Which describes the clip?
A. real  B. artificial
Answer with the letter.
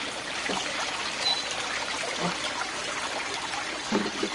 B